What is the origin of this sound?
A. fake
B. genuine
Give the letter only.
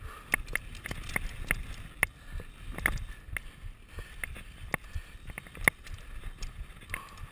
B